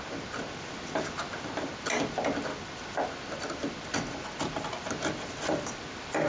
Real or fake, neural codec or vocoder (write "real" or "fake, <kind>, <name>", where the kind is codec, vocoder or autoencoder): real